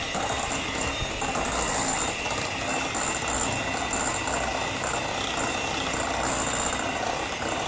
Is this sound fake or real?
real